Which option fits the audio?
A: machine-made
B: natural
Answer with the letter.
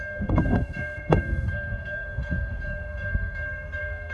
A